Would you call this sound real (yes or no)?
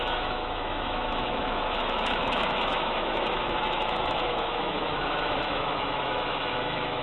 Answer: no